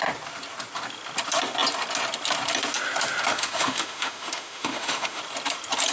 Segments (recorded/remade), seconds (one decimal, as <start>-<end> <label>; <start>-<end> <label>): 0.0-3.3 recorded; 3.3-5.2 remade; 5.2-5.9 recorded